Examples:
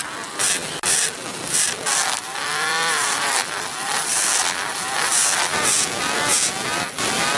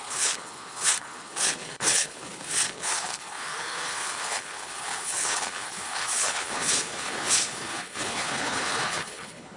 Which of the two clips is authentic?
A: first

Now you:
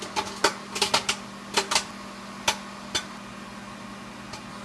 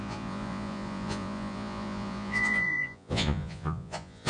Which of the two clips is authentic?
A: first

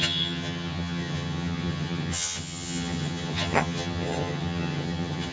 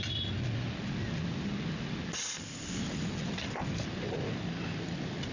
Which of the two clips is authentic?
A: second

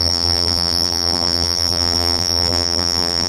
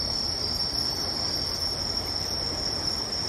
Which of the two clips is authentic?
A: second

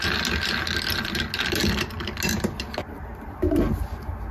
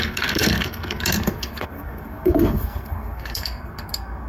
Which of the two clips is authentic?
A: first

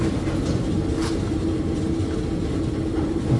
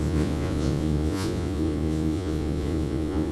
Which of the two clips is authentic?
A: first